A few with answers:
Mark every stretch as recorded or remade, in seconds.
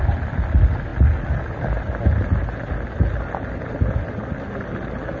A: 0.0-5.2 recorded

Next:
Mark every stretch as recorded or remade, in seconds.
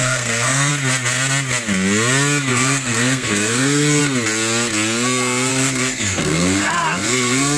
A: 0.0-0.7 remade; 0.7-2.5 recorded; 2.5-4.0 remade; 4.0-5.5 recorded; 5.5-7.6 remade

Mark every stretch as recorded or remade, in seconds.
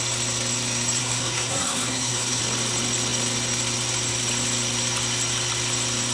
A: 0.0-1.0 recorded; 1.0-2.4 remade; 2.4-6.1 recorded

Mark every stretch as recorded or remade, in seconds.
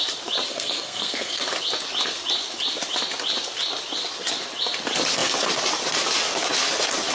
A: 0.0-0.5 recorded; 0.5-1.4 remade; 1.4-7.1 recorded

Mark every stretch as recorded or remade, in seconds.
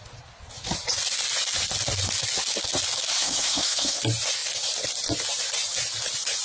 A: 0.0-3.1 recorded; 3.1-4.0 remade; 4.0-6.4 recorded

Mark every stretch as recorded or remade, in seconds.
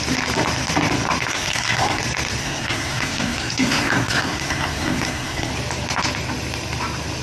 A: 0.0-1.3 recorded; 1.3-2.0 remade; 2.0-2.4 recorded; 2.4-5.5 remade; 5.5-7.2 recorded